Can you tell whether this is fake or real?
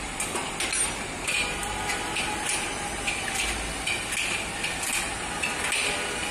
real